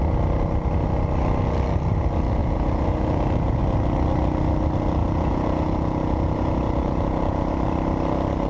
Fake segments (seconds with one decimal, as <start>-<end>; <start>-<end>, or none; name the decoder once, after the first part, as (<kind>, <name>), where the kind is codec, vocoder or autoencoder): 2.4-3.6 (vocoder, Vocos); 5.0-7.5